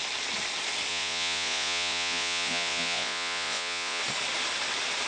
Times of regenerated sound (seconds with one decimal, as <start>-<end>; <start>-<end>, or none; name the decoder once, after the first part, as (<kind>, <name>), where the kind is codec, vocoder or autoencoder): 0.9-4.0 (vocoder, Vocos)